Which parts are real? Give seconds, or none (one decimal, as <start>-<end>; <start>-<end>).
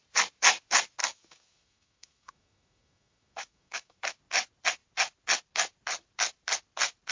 0.0-1.0; 4.2-7.1